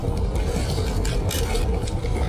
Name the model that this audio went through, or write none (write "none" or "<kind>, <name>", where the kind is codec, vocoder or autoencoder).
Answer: none